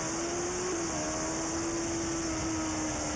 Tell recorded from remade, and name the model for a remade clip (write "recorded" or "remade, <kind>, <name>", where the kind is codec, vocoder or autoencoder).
recorded